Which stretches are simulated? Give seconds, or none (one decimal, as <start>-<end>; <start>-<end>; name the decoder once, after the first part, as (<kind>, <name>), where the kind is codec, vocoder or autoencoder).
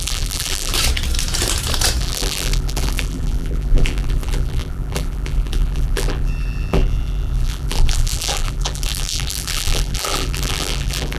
0.0-0.7 (vocoder, BigVGAN v2); 2.0-11.2